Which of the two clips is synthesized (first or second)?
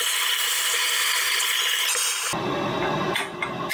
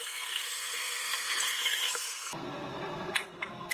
second